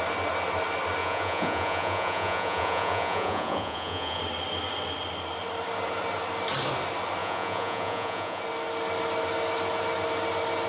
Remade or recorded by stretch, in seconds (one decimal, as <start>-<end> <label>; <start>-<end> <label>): 0.0-1.0 recorded; 1.0-4.2 remade; 4.2-7.2 recorded; 7.2-8.4 remade; 8.4-10.7 recorded